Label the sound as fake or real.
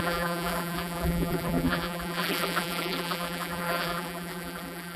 fake